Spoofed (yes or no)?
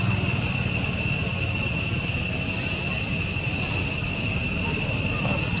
no